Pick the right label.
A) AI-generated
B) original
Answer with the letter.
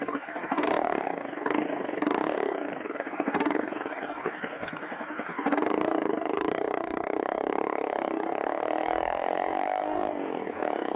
A